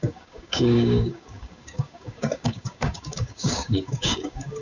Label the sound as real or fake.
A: fake